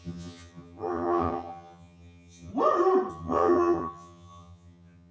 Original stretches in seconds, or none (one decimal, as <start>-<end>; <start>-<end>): 2.5-3.1